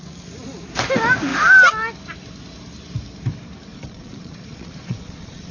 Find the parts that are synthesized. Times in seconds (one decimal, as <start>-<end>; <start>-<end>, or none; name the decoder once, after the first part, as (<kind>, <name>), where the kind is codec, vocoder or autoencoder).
3.7-5.5 (vocoder, Vocos)